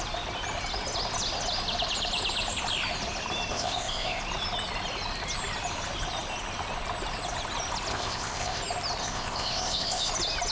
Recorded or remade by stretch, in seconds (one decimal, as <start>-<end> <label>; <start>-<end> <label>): 0.0-3.5 recorded; 3.5-4.2 remade; 4.2-7.9 recorded; 7.9-8.6 remade; 8.6-9.0 recorded; 9.0-10.1 remade; 10.1-10.5 recorded